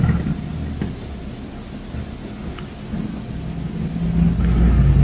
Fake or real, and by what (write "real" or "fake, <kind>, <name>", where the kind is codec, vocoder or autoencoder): real